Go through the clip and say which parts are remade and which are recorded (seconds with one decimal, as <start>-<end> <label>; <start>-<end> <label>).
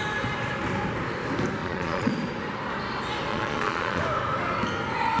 0.0-1.6 recorded; 1.6-2.1 remade; 2.1-3.3 recorded; 3.3-4.0 remade; 4.0-5.2 recorded